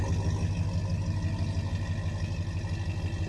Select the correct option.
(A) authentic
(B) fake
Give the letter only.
A